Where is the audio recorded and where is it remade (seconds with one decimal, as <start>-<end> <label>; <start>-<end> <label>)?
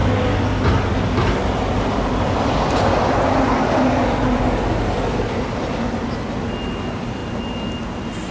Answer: 0.0-8.3 recorded